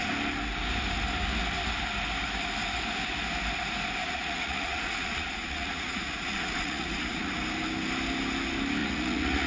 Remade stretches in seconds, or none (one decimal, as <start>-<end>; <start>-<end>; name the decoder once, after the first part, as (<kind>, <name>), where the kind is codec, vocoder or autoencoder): 4.0-7.3 (vocoder, Vocos); 8.8-9.5